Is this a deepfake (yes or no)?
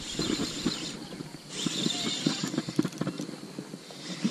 yes